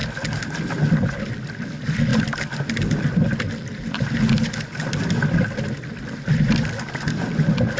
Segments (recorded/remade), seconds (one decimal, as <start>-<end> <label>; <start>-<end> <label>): 0.0-7.8 recorded